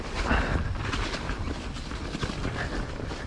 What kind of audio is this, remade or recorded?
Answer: recorded